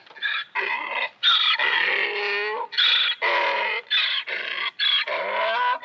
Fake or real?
real